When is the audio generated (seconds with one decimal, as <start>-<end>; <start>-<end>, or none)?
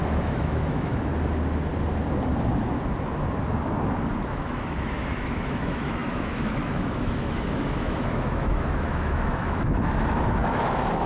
0.0-1.1; 4.3-11.1